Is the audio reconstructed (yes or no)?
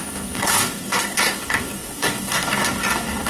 yes